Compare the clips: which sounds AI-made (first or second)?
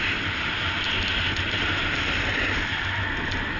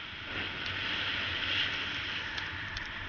second